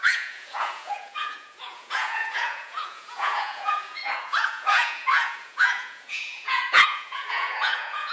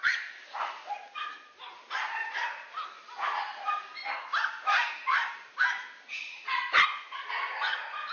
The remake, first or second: first